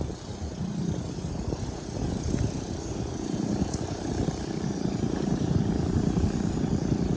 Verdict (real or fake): real